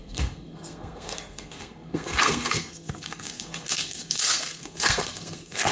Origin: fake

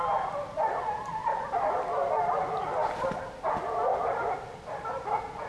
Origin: real